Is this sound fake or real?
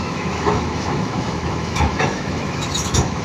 fake